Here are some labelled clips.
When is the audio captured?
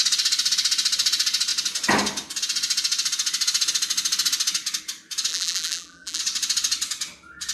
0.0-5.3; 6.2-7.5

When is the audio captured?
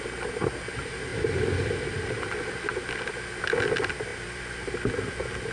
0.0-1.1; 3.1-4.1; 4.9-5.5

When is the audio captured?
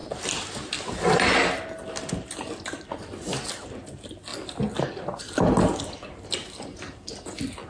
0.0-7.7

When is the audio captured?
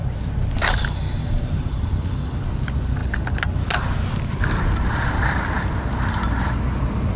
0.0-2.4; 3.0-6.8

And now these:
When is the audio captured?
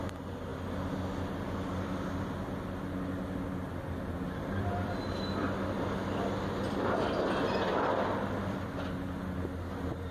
0.0-10.1